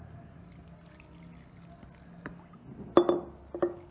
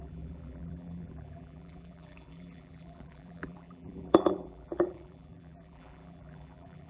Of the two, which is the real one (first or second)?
first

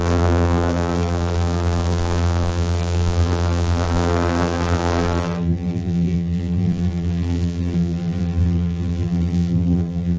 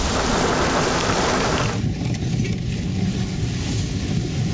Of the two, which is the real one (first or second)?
second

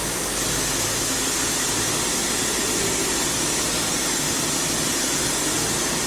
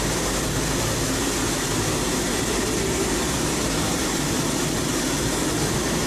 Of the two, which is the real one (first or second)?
first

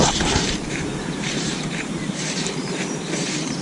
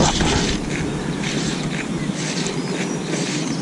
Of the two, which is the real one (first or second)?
second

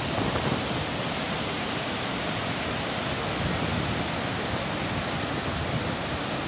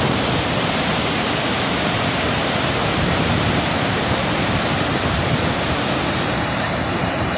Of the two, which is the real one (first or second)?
first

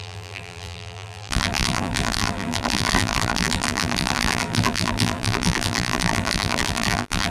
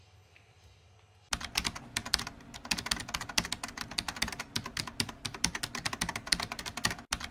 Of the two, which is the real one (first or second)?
second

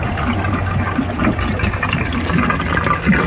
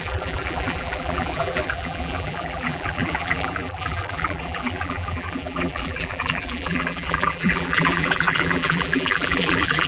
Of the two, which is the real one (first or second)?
first